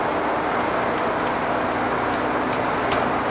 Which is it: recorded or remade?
recorded